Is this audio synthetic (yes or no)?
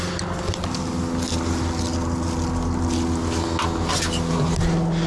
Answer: no